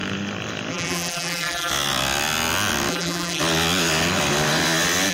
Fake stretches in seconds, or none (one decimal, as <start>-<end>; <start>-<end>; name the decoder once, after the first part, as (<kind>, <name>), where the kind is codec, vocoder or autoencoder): 0.7-1.7 (vocoder, BigVGAN v2); 2.9-3.4